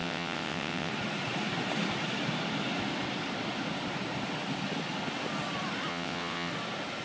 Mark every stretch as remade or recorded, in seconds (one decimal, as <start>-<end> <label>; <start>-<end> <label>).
0.0-0.9 remade; 0.9-5.9 recorded; 5.9-6.5 remade; 6.5-7.0 recorded